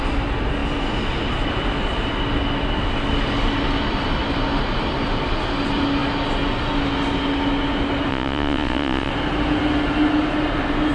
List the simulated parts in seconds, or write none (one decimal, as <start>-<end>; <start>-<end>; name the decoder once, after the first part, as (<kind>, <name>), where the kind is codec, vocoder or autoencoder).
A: 8.1-9.1 (vocoder, Vocos)

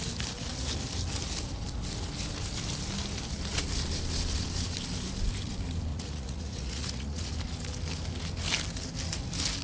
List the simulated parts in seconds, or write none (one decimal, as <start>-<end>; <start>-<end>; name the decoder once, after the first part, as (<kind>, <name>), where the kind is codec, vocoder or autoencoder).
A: 5.9-7.3 (vocoder, Vocos)

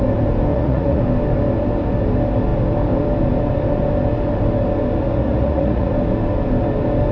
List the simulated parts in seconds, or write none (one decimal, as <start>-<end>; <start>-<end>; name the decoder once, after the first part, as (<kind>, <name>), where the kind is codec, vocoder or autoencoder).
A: 0.5-1.0 (vocoder, Vocos); 5.2-5.9

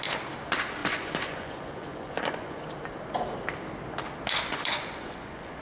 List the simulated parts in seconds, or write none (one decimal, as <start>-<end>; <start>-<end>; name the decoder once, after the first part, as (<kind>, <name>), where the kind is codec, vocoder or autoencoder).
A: 0.8-2.7 (vocoder, Vocos); 4.5-5.6

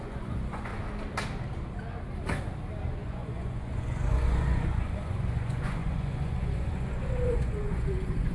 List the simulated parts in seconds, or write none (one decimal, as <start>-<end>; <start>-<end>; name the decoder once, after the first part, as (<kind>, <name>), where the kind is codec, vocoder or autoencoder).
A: 0.0-0.7 (vocoder, Vocos); 2.9-8.3

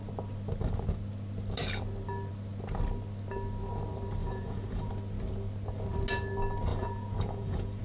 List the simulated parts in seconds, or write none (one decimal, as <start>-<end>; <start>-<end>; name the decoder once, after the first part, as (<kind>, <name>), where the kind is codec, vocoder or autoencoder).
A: 4.2-4.9 (vocoder, Vocos); 6.7-7.8

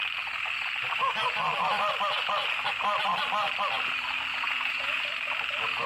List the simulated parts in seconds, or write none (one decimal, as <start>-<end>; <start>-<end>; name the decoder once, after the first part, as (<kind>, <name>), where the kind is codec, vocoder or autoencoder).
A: 4.3-5.0 (vocoder, Vocos)

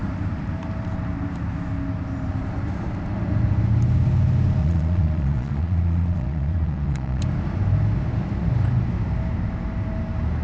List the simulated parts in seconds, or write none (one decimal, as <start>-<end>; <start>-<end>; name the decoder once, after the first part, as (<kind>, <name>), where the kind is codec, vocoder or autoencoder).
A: 4.6-7.2 (vocoder, Vocos)